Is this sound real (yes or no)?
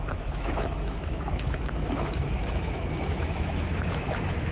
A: no